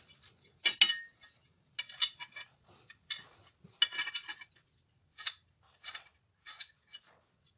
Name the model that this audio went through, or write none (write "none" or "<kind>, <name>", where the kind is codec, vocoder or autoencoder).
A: none